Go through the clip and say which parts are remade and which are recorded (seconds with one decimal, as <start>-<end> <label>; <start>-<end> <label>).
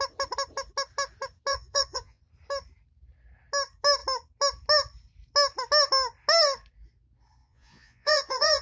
0.0-1.5 recorded; 1.5-2.2 remade; 2.2-7.4 recorded; 7.4-8.6 remade